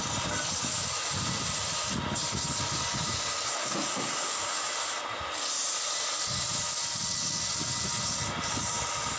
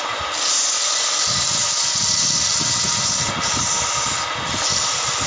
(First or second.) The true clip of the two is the first